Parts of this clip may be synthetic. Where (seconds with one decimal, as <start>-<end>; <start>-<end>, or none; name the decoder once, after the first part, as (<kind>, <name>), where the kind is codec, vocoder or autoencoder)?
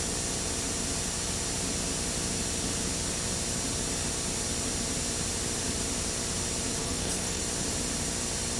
6.8-7.4 (codec, SNAC)